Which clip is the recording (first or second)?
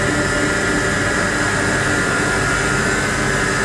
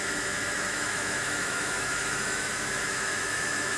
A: first